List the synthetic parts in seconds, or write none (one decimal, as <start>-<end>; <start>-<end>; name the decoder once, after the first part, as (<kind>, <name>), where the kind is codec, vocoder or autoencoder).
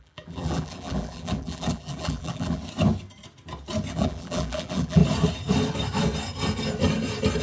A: 0.0-2.6 (vocoder, BigVGAN v2); 3.9-5.0